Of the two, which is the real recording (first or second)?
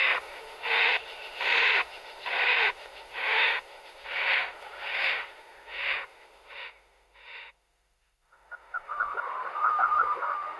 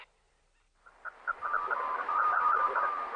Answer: second